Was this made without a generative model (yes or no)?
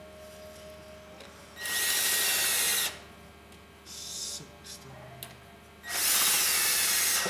yes